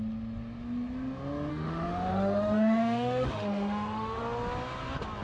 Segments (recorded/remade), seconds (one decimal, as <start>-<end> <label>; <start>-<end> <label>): 0.0-1.5 recorded; 1.5-4.2 remade; 4.2-5.2 recorded